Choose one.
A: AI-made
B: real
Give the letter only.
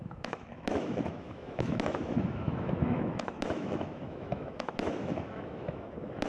A